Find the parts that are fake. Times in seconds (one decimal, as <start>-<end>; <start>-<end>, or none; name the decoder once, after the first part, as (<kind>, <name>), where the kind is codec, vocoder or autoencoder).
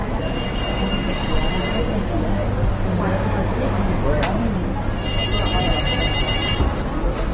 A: none